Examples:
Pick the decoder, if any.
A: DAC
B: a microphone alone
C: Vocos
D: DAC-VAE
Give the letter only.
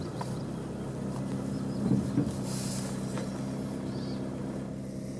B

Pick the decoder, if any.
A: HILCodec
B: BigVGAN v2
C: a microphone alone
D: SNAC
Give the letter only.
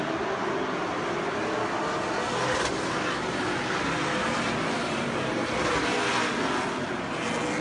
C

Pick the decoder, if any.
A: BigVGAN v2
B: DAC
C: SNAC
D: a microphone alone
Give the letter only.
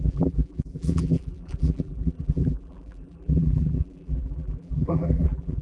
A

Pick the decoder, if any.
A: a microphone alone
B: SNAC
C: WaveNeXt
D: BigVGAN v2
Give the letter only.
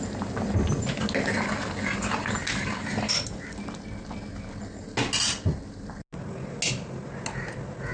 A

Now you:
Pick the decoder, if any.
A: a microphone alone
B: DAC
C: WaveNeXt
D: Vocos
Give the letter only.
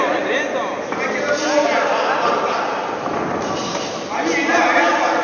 A